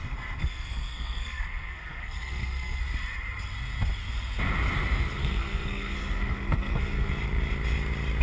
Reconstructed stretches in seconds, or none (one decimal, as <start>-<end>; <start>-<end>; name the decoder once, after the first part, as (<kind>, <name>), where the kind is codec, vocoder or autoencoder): 0.4-2.8 (codec, SNAC); 5.2-7.1